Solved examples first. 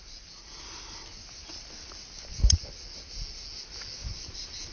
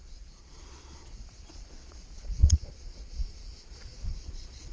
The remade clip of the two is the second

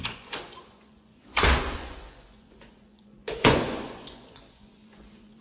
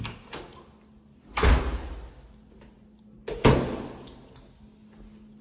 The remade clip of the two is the first